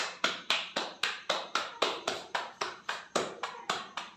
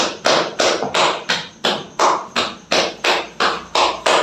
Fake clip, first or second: first